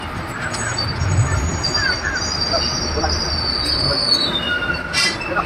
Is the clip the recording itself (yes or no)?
yes